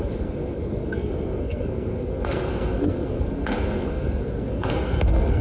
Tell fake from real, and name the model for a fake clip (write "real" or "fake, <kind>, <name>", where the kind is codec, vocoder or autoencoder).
fake, codec, SNAC